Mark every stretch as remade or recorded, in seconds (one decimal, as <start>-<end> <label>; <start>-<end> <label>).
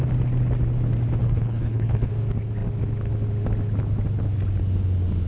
0.0-1.2 recorded; 1.2-2.1 remade; 2.1-5.3 recorded